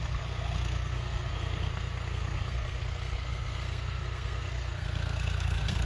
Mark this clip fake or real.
fake